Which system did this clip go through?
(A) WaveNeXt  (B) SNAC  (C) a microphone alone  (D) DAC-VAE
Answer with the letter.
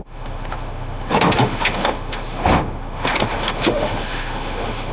D